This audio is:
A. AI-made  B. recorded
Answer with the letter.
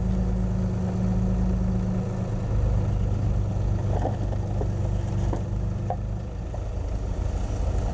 B